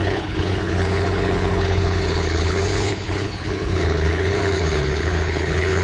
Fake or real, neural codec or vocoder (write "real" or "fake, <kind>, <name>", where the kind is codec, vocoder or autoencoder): fake, codec, HILCodec